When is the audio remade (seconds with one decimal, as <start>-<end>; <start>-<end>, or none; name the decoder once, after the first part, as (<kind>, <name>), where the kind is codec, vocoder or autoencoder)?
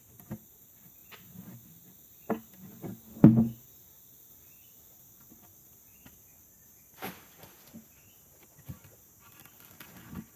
none